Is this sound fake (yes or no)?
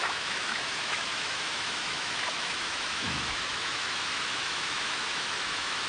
yes